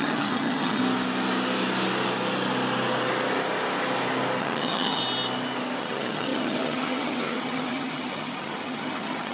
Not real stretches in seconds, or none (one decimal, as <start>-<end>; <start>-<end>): 0.0-0.8; 4.4-5.0; 5.8-9.3